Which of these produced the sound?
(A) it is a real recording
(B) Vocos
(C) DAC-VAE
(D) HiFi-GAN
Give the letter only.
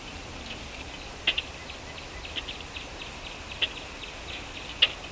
A